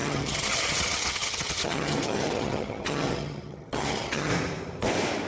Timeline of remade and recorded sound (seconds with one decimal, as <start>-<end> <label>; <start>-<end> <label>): 0.0-4.3 remade; 4.3-5.3 recorded

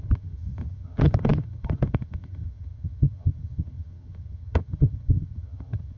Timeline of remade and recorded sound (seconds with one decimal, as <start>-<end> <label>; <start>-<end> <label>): 0.0-6.0 remade

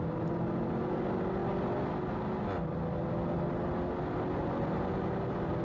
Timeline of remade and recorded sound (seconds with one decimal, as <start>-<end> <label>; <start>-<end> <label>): 0.0-5.6 recorded

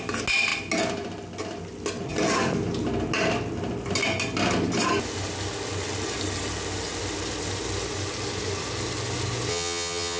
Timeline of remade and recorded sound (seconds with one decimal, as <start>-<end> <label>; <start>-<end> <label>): 0.0-9.5 recorded; 9.5-10.2 remade

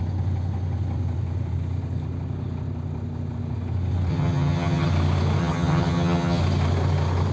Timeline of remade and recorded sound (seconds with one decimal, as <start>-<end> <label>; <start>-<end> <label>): 0.0-4.1 recorded; 4.1-4.9 remade; 4.9-5.4 recorded; 5.4-6.4 remade; 6.4-7.3 recorded